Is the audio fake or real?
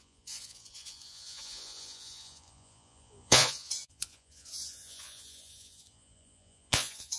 fake